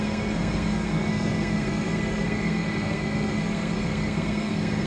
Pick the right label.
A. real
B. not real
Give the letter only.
B